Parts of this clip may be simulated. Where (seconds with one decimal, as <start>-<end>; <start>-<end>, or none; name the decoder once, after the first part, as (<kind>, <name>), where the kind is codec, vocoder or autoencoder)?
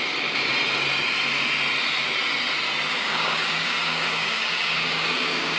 0.0-0.5 (codec, DAC); 2.9-5.6